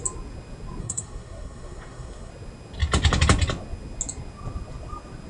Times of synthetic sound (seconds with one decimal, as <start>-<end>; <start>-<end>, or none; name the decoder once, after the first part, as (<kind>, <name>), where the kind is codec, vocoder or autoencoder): 0.8-2.3 (codec, SNAC)